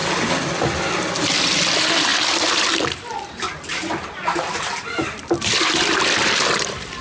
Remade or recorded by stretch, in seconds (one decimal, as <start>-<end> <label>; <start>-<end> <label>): 0.0-0.9 recorded; 0.9-7.0 remade